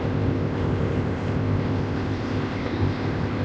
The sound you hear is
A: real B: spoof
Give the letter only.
B